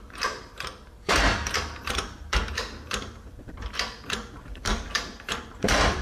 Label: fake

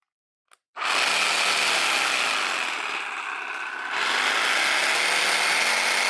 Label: real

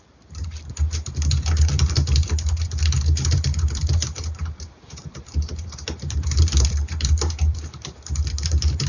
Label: fake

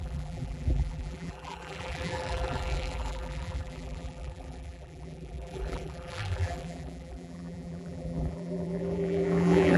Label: fake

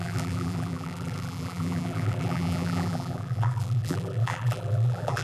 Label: fake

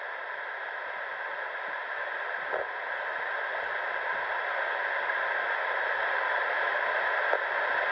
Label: real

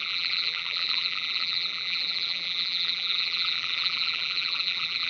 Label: fake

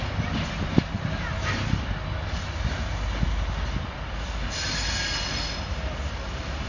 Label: real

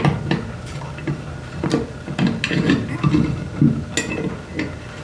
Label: real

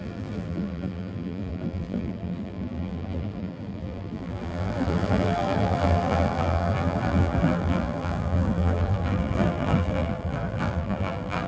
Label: fake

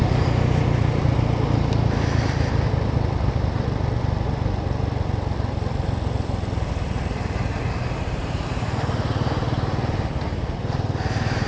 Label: real